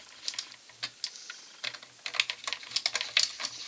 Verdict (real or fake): real